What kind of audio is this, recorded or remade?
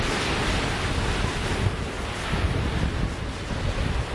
recorded